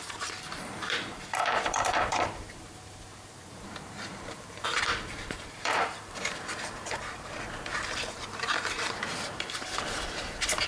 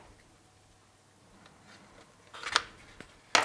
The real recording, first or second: second